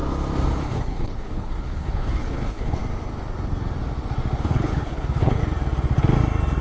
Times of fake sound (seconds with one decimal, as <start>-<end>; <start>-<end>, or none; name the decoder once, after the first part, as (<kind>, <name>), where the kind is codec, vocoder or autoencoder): 0.6-2.8 (codec, HILCodec); 4.4-5.4